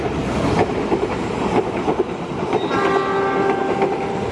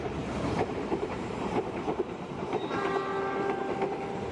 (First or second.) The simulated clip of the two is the second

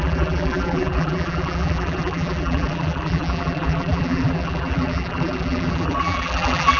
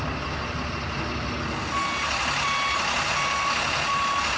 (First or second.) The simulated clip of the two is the first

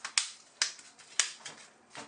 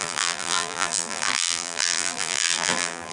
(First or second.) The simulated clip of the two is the second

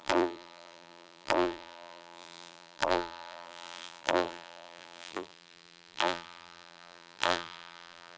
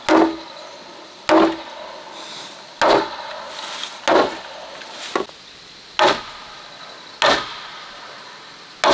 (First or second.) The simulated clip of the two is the first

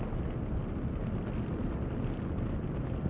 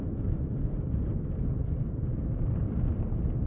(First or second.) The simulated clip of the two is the second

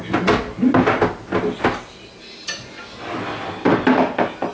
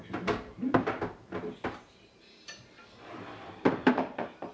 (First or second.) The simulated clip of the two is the second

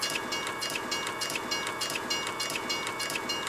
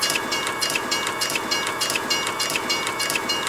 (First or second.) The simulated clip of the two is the second